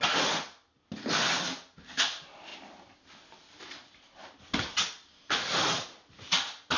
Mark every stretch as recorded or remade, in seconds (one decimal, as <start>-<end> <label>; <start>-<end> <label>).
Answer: 0.0-6.8 recorded